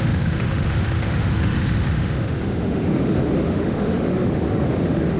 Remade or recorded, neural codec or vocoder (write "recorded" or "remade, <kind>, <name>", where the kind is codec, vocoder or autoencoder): remade, autoencoder, DAC-VAE